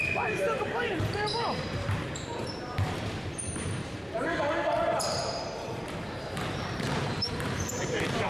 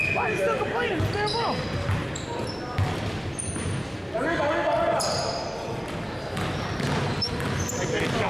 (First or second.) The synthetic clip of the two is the first